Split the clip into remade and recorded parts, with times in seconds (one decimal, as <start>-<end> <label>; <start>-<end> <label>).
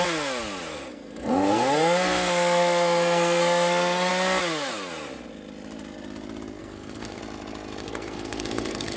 0.0-0.7 recorded; 0.7-4.1 remade; 4.1-6.6 recorded; 6.6-7.2 remade; 7.2-7.8 recorded; 7.8-9.0 remade